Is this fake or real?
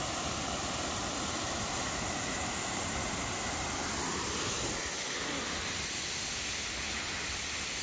real